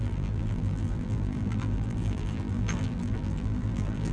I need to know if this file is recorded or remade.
remade